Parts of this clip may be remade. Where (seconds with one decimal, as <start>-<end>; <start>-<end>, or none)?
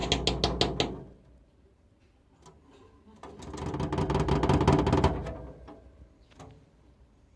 none